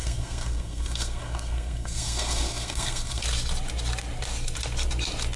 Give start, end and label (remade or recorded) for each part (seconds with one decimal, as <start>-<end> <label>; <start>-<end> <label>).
0.0-3.2 remade; 3.2-5.4 recorded